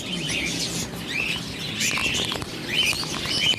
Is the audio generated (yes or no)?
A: no